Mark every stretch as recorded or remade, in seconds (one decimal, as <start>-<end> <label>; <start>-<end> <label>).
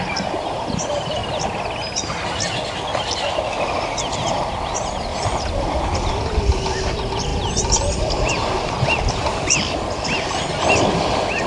0.0-5.1 recorded; 5.1-6.2 remade; 6.2-7.3 recorded; 7.3-10.7 remade; 10.7-11.5 recorded